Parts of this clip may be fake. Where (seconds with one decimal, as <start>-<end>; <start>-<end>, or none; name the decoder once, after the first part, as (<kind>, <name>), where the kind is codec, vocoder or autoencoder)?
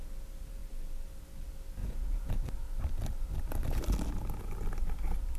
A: 1.8-2.4 (vocoder, Vocos)